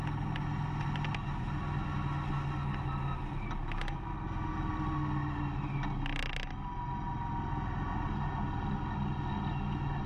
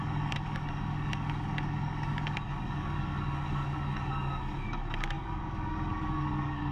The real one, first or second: first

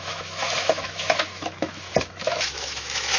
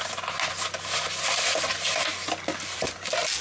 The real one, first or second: second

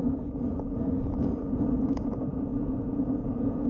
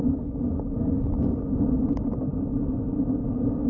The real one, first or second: second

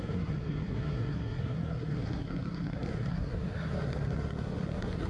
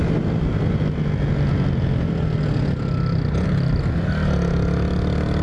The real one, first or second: second